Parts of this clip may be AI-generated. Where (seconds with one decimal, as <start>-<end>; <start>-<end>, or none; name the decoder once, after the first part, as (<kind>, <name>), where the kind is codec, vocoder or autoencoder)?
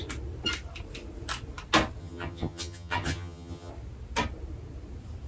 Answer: 2.0-3.7 (vocoder, HiFi-GAN)